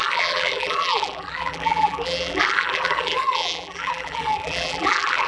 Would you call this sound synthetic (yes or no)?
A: yes